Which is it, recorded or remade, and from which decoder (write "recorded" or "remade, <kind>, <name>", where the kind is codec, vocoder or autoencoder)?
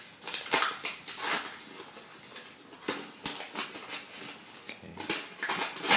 recorded